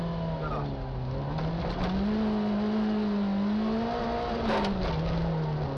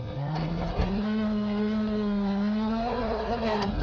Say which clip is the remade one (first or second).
second